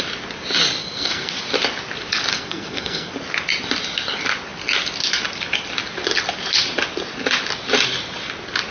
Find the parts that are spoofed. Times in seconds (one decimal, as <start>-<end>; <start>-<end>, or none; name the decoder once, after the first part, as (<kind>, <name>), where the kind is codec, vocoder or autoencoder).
0.8-1.3 (codec, SNAC); 2.3-3.1